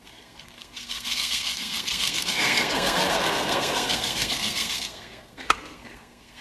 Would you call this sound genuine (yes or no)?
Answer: no